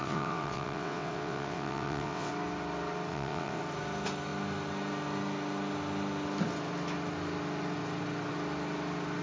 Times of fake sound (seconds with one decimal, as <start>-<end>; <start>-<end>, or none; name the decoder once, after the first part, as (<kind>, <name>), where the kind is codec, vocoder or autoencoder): 0.0-2.3 (vocoder, WaveNeXt); 3.1-3.6